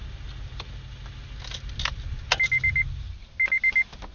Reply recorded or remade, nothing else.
recorded